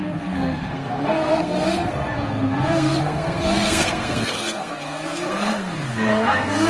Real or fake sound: fake